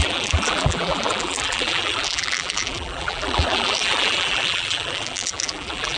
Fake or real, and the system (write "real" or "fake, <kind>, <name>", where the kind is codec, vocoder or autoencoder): fake, vocoder, BigVGAN v2